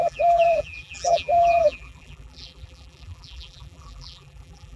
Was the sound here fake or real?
fake